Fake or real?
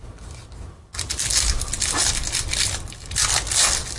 real